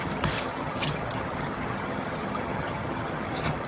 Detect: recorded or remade remade